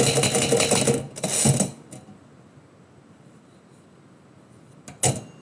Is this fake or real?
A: real